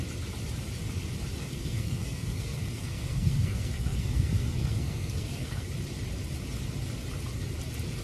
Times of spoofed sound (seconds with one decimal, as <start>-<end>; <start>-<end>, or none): 1.4-5.7